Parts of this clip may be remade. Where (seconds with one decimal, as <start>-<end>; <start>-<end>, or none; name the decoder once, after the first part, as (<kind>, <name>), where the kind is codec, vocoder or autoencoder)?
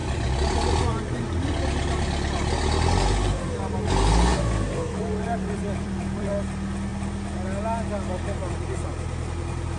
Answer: 0.0-0.7 (vocoder, BigVGAN v2); 5.0-6.3